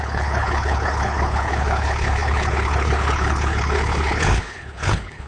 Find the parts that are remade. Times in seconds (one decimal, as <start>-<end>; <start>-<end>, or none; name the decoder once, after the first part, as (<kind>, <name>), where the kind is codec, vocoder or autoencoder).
0.0-5.3 (codec, HILCodec)